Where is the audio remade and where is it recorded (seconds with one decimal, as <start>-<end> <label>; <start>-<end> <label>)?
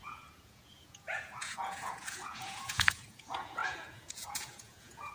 0.0-5.1 remade